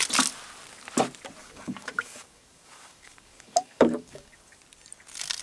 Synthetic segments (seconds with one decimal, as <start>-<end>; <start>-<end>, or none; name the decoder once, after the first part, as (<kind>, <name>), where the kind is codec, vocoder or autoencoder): 1.4-4.6 (codec, DAC)